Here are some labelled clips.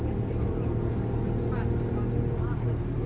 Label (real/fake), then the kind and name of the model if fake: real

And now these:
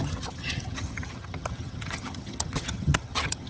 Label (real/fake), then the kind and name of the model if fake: fake, vocoder, HiFi-GAN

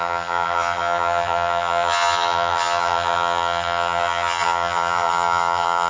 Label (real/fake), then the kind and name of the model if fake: fake, vocoder, HiFi-GAN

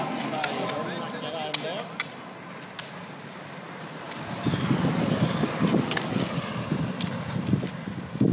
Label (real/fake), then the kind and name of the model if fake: real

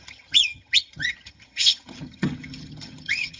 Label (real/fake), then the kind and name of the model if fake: fake, vocoder, HiFi-GAN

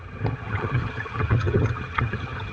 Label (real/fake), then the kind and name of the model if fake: fake, vocoder, HiFi-GAN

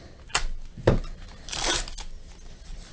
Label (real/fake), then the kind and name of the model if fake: real